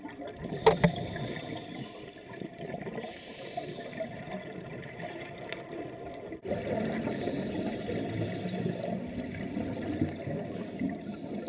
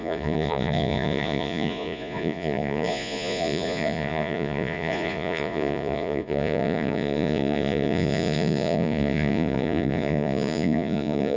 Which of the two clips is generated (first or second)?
second